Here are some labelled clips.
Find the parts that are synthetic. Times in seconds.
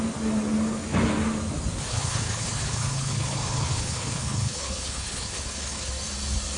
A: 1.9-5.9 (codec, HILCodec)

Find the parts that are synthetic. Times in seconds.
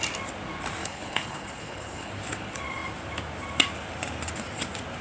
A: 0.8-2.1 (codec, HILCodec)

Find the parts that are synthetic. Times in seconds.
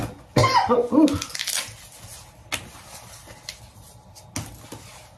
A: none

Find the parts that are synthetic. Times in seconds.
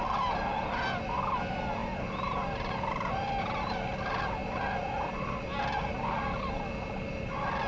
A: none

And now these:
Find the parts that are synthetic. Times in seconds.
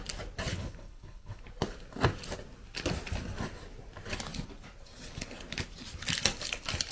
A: 0.5-1.4 (codec, HILCodec)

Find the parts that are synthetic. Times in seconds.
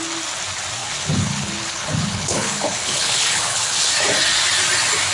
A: 0.8-3.9 (codec, HILCodec)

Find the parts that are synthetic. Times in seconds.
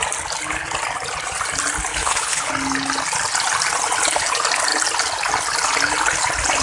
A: 1.9-2.5 (codec, HILCodec)